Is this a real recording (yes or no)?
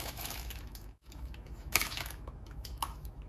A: no